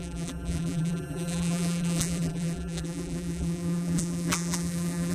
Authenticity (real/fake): fake